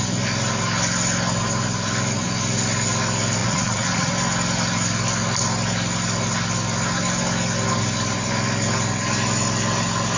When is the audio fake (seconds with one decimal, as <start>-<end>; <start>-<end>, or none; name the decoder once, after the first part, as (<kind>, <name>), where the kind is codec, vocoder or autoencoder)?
3.4-4.1 (vocoder, Vocos)